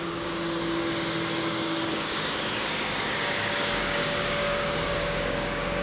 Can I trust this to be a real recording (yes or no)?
no